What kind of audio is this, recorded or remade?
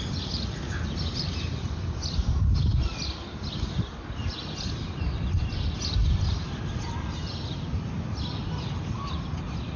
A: remade